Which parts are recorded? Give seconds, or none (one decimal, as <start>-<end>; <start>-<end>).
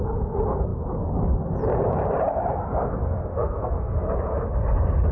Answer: 0.0-3.3; 4.1-5.1